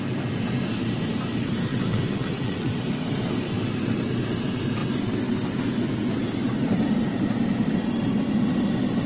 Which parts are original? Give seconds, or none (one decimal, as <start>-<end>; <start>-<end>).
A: 0.0-1.7; 2.7-9.1